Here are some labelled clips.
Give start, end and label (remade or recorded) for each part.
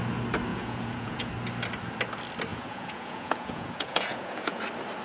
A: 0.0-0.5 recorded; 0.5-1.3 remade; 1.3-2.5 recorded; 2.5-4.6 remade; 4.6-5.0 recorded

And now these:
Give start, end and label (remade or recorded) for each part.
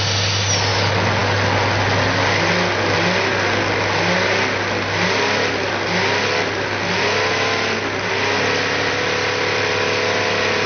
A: 0.0-10.7 recorded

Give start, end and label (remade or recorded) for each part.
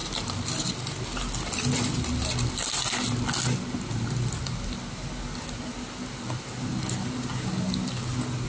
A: 0.0-8.5 recorded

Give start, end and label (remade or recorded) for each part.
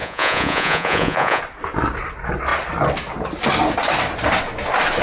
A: 0.0-1.4 remade; 1.4-5.0 recorded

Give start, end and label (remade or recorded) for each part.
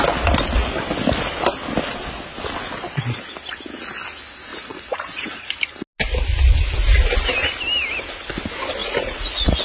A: 0.0-4.5 recorded; 4.5-5.6 remade; 5.6-8.8 recorded; 8.8-9.6 remade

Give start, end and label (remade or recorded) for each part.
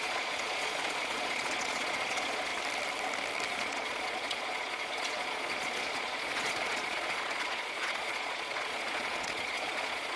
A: 0.0-2.5 remade; 2.5-3.5 recorded; 3.5-10.2 remade